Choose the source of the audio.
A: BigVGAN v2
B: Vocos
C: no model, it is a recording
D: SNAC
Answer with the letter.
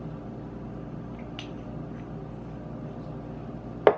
C